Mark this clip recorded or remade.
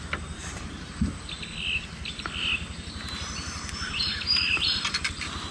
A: recorded